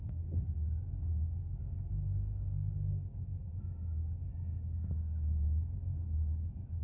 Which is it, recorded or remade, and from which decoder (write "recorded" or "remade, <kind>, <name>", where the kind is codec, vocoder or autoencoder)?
remade, codec, DAC